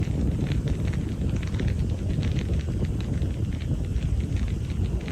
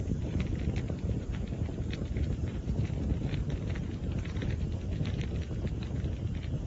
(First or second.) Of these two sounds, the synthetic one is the second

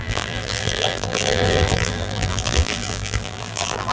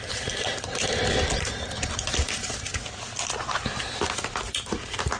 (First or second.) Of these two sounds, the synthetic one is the first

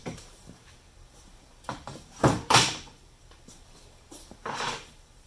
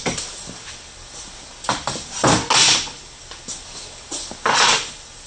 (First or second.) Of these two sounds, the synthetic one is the first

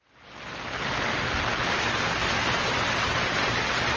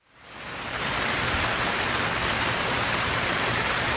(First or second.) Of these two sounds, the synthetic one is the second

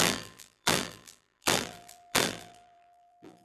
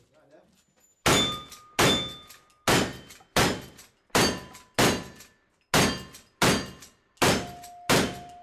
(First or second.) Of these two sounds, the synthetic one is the first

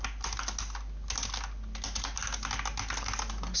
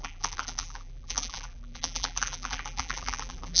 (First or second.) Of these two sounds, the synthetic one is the second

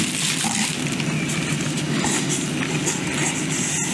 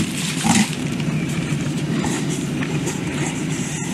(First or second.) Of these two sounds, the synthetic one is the second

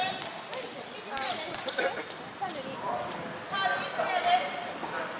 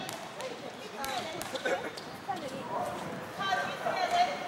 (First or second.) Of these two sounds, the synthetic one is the second